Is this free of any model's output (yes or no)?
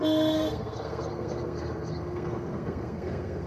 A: no